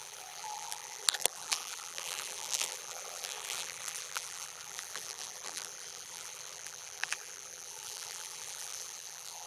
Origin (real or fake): fake